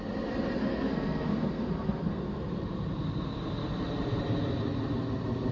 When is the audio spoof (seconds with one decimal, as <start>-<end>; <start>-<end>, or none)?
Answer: 0.6-2.4